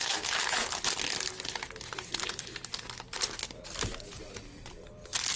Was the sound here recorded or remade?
recorded